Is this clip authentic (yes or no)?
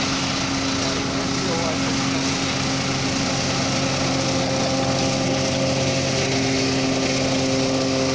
yes